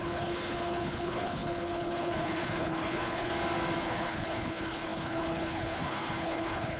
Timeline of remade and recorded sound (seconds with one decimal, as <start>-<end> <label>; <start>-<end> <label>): 0.0-3.3 remade; 3.3-3.8 recorded; 3.8-6.8 remade